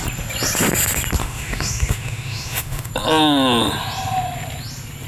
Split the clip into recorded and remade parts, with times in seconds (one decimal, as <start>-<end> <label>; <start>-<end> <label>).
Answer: 0.0-1.2 recorded; 1.2-2.9 remade; 2.9-5.1 recorded